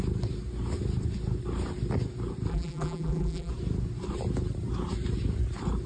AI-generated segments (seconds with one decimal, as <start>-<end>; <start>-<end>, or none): 2.5-3.5